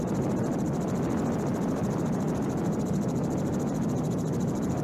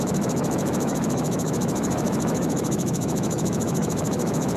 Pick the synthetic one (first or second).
second